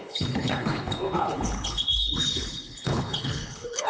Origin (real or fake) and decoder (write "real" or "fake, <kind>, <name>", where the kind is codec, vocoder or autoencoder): fake, codec, HILCodec